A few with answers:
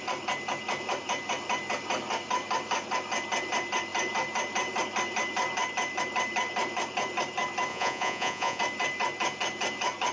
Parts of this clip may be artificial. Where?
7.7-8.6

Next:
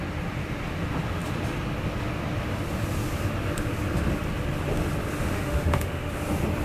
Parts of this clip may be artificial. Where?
5.3-6.1

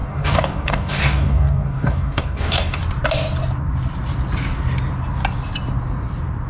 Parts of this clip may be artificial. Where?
0.0-2.8

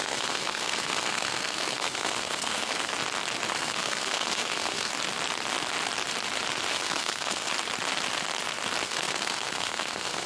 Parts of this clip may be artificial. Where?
0.0-2.9; 3.5-4.9; 6.7-7.5; 8.8-10.3

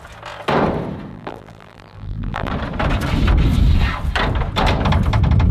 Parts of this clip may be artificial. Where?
1.1-2.5

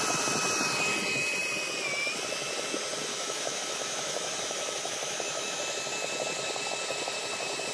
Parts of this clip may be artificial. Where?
3.1-5.6